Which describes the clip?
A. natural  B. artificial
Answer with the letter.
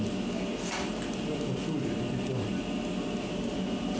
A